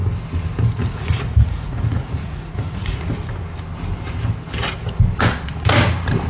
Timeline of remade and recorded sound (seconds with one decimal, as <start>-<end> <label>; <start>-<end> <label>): 0.0-0.8 recorded; 0.8-3.1 remade; 3.1-6.3 recorded